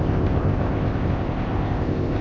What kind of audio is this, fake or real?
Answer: fake